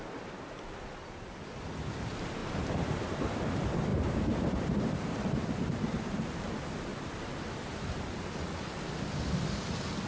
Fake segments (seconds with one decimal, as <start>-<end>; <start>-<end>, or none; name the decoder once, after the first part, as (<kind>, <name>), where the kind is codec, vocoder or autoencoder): 3.9-6.5 (vocoder, BigVGAN v2); 6.9-7.4